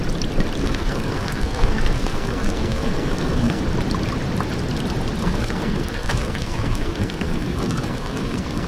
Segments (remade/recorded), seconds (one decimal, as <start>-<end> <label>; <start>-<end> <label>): 0.0-0.6 recorded; 0.6-3.6 remade; 3.6-5.2 recorded; 5.2-8.7 remade